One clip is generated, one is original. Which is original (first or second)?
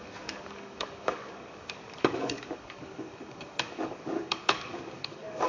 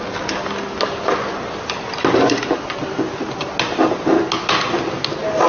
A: second